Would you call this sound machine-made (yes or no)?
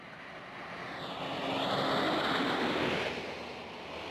no